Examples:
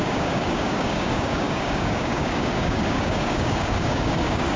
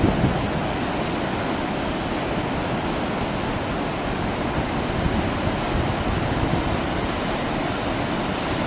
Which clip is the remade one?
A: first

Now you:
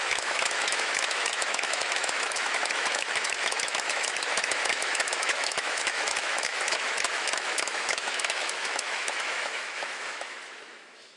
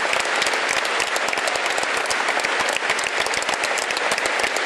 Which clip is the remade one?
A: first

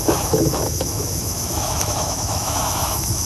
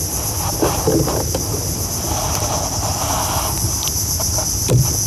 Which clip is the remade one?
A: first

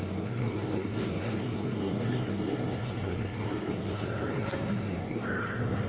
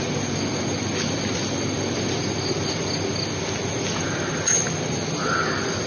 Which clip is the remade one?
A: first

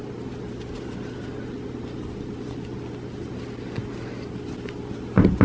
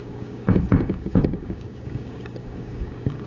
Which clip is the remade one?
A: second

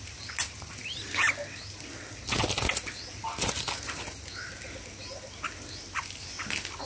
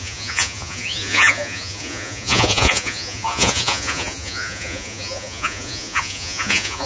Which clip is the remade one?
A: second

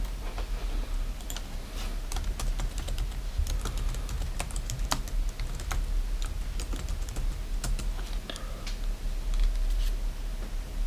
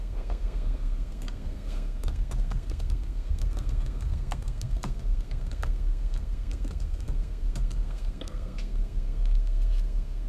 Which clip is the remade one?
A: second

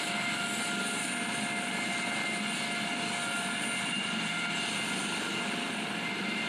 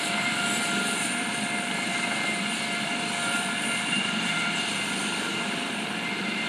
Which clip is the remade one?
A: second